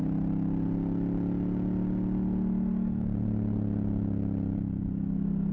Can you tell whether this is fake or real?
real